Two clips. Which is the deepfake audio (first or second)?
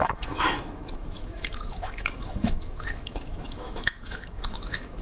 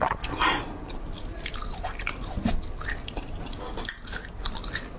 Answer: first